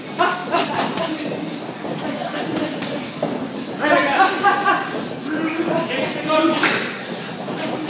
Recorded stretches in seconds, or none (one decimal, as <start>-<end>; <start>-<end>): 0.0-7.9